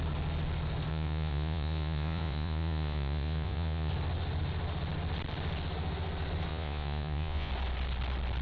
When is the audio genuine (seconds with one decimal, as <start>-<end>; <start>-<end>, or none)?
0.0-0.9; 3.9-6.5; 7.5-8.4